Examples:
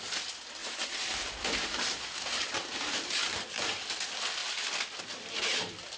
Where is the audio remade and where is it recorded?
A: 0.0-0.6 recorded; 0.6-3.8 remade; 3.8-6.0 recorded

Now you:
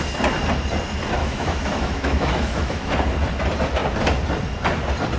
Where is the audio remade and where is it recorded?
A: 0.0-1.2 recorded; 1.2-2.9 remade; 2.9-5.2 recorded

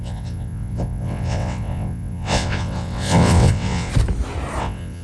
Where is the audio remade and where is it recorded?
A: 0.0-3.9 remade; 3.9-4.6 recorded; 4.6-5.0 remade